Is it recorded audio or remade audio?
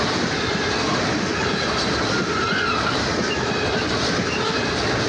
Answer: recorded